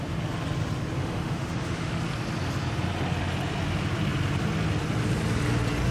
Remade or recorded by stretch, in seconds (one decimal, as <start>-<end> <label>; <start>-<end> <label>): 0.0-1.0 recorded; 1.0-2.0 remade; 2.0-5.9 recorded